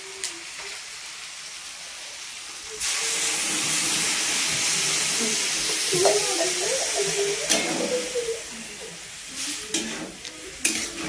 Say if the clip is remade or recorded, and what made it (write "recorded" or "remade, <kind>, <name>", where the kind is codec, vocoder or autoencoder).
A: recorded